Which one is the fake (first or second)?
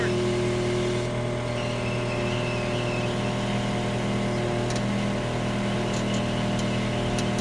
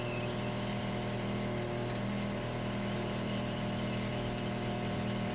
second